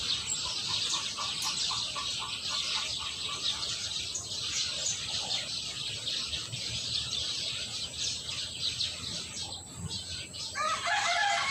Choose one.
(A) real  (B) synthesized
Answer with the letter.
A